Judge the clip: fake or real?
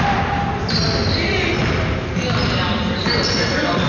real